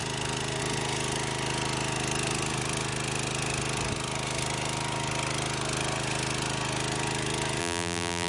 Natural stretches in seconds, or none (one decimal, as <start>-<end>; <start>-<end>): 0.0-7.6